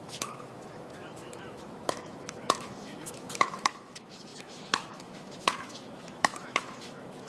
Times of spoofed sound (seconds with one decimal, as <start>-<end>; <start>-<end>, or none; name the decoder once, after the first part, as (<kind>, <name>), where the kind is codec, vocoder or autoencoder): 0.0-7.3 (autoencoder, DAC-VAE)